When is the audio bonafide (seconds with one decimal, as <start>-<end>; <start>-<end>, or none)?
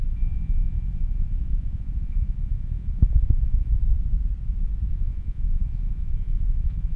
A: 3.8-4.9